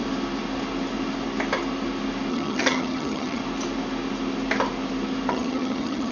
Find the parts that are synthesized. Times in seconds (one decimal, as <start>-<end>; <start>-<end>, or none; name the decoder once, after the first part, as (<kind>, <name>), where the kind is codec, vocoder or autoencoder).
2.3-3.4 (vocoder, HiFi-GAN); 5.3-6.1